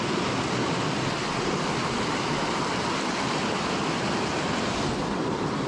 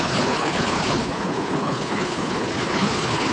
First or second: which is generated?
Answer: second